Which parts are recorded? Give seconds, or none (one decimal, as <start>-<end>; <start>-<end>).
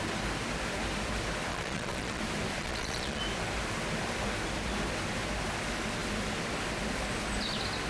0.0-1.5; 2.2-2.6; 3.2-7.9